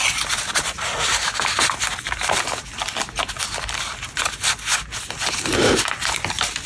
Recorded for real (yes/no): yes